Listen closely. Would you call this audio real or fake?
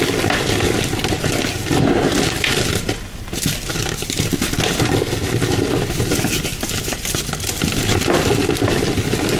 real